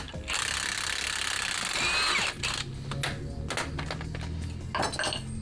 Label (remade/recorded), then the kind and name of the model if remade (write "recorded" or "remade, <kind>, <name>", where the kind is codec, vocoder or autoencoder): recorded